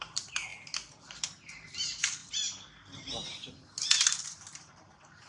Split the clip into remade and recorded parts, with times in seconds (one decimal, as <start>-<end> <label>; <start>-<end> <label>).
0.0-0.5 remade; 0.5-1.0 recorded; 1.0-2.2 remade; 2.2-4.4 recorded; 4.4-5.3 remade